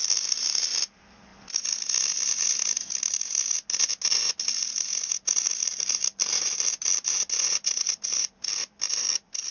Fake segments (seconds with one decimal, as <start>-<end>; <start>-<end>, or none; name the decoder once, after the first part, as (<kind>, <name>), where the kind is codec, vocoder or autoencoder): 0.0-0.6 (vocoder, BigVGAN v2); 5.6-7.1